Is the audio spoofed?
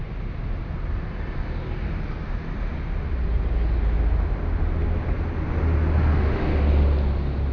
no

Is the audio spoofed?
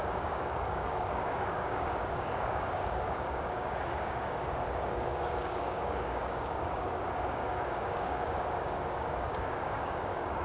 yes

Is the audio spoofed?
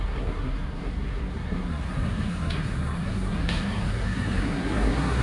yes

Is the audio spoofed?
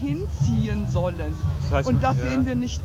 yes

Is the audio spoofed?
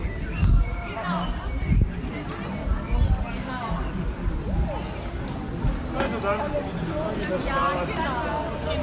no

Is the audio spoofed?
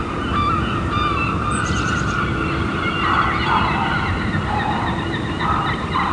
yes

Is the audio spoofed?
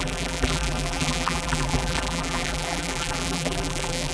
yes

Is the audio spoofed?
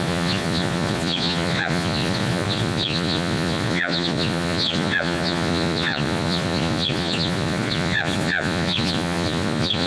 yes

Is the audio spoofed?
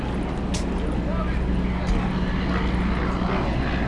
no